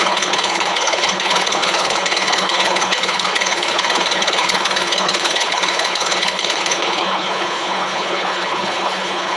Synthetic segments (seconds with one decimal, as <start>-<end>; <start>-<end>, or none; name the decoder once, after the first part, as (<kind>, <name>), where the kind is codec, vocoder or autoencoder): 0.0-9.4 (codec, HILCodec)